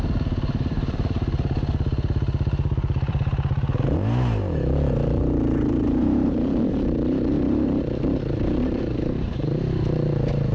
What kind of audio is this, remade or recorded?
remade